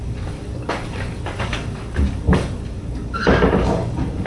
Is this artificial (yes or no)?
yes